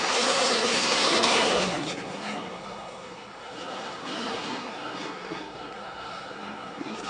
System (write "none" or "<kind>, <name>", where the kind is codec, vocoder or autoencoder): codec, SNAC